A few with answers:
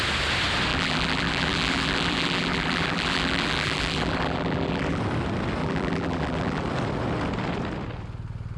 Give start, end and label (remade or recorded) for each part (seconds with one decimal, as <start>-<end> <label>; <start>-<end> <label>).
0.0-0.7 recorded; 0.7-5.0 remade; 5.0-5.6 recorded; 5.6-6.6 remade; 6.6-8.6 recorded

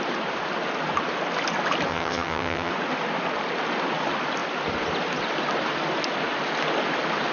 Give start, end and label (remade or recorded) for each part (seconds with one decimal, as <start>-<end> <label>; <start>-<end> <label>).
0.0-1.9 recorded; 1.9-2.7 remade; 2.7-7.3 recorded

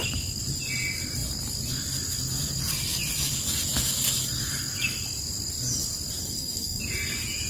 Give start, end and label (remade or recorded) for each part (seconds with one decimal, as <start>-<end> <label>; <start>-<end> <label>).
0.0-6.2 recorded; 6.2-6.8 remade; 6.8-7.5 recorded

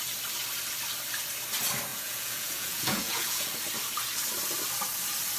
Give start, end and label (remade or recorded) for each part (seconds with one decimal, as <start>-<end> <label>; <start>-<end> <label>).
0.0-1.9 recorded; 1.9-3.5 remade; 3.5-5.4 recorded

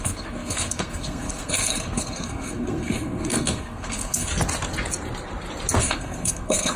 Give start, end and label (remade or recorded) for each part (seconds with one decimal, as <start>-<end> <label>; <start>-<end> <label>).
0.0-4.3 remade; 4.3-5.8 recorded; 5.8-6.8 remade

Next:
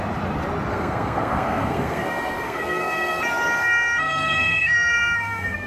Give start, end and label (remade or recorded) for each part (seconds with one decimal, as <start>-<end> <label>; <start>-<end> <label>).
0.0-0.7 recorded; 0.7-3.2 remade; 3.2-3.6 recorded; 3.6-5.7 remade